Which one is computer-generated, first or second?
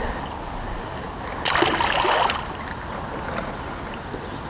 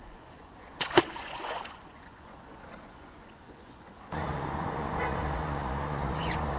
second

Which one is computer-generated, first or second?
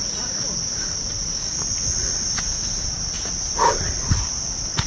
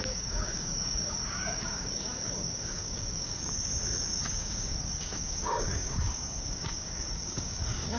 second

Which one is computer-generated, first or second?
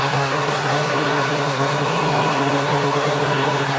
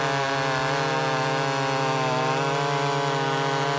first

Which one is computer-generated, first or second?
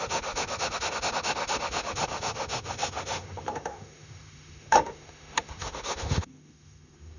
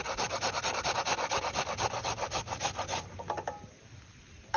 first